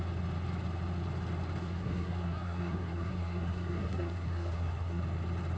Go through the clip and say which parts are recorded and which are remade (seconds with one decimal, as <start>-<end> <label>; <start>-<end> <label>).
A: 0.0-1.6 recorded; 1.6-5.0 remade; 5.0-5.6 recorded